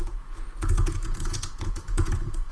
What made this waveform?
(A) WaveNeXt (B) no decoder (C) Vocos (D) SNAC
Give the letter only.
C